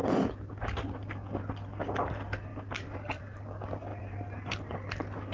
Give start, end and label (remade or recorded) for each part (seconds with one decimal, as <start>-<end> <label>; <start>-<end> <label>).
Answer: 0.0-0.6 remade; 0.6-2.5 recorded; 2.5-3.2 remade; 3.2-3.9 recorded; 3.9-4.5 remade; 4.5-5.3 recorded